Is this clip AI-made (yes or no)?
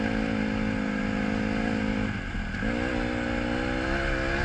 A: no